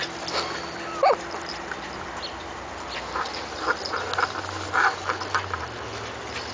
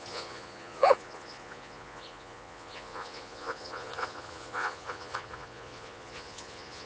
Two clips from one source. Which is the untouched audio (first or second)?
first